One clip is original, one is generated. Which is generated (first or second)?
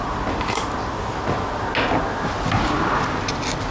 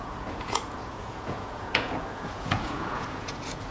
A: second